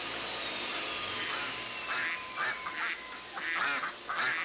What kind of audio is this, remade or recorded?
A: recorded